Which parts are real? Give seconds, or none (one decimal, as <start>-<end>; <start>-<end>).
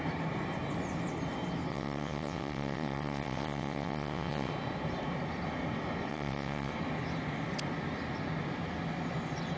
0.0-1.7; 4.5-6.1; 6.7-9.6